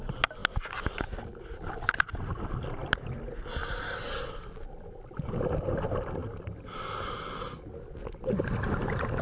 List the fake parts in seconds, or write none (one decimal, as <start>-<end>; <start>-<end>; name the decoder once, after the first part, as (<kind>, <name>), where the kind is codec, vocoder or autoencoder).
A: none